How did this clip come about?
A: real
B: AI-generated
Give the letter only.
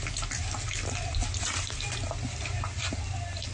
A